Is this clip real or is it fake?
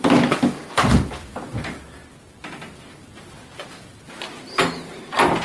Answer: real